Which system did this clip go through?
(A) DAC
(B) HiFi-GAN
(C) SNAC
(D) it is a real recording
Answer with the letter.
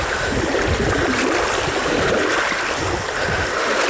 D